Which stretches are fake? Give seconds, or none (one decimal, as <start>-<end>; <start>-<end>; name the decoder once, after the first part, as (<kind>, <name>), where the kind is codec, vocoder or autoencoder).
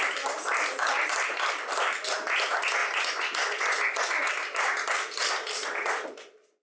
2.8-4.3 (vocoder, Vocos)